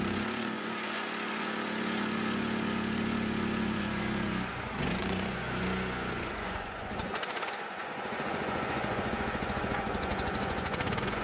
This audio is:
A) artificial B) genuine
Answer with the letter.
A